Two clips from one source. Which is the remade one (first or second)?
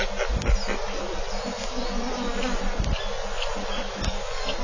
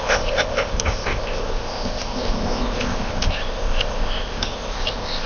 second